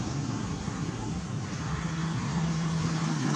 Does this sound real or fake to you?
fake